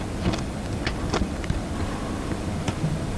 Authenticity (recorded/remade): remade